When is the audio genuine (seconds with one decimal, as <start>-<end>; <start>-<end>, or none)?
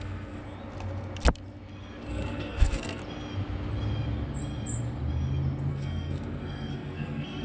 0.4-2.1; 3.0-5.7